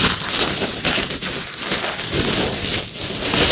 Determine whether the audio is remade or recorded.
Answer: recorded